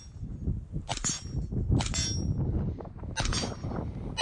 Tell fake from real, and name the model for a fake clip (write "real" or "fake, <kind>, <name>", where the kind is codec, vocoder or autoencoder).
real